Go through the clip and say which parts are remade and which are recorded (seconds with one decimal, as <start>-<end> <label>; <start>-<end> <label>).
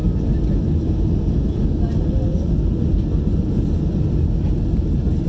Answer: 0.0-5.3 recorded